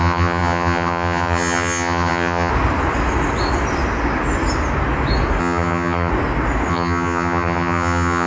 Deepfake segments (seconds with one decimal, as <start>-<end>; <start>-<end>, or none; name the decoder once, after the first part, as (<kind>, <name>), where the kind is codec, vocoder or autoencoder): 0.0-2.5 (vocoder, HiFi-GAN); 5.4-6.1; 6.7-8.3